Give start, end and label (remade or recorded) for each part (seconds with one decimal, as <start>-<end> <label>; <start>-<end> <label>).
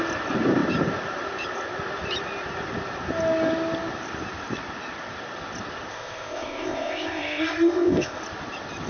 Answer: 0.0-5.9 recorded; 5.9-8.2 remade; 8.2-8.9 recorded